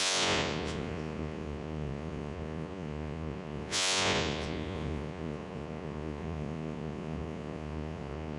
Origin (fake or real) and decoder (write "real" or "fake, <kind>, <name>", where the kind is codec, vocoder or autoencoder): fake, vocoder, Vocos